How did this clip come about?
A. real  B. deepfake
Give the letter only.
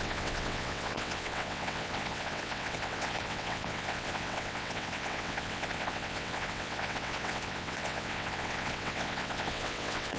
B